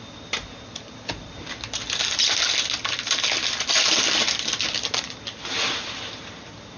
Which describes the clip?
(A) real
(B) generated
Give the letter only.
A